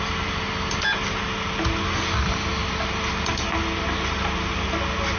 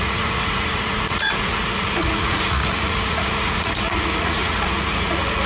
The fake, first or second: second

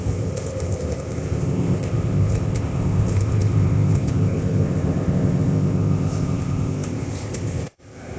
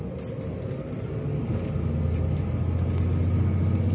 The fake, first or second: first